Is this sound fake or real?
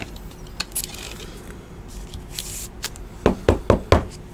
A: real